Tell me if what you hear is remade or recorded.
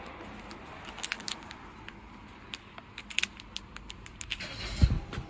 recorded